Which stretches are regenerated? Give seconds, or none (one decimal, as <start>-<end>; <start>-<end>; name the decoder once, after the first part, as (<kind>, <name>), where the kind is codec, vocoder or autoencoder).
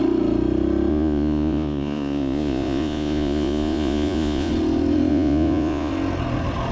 0.9-4.5 (vocoder, Vocos); 5.1-5.9